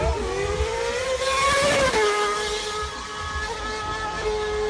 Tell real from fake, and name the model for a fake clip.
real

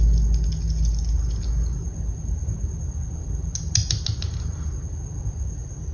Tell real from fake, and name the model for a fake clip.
real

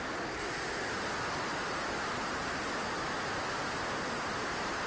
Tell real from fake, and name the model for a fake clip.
real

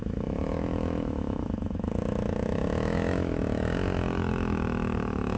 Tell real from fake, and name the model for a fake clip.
fake, autoencoder, DAC-VAE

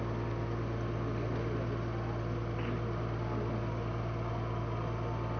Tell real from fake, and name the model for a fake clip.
real